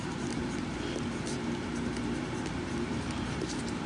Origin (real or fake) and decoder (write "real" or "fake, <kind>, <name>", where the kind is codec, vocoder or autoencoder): fake, vocoder, BigVGAN v2